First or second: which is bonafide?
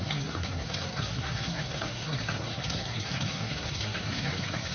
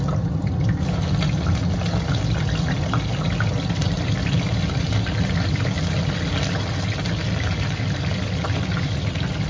second